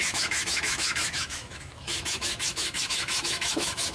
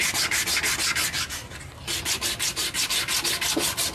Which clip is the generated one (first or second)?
first